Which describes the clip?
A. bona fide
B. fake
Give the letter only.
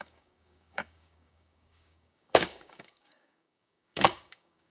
B